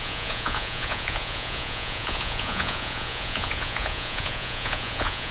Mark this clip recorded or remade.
remade